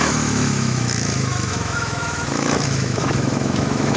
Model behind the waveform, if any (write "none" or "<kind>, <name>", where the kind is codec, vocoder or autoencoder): autoencoder, DAC-VAE